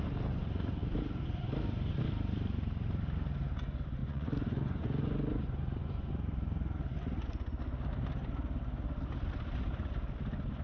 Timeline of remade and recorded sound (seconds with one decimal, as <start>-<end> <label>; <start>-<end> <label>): 0.0-4.0 recorded; 4.0-6.1 remade; 6.1-10.6 recorded